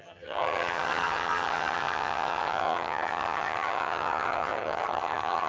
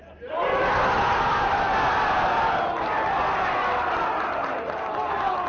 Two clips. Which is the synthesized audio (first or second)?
first